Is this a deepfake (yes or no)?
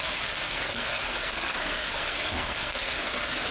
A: yes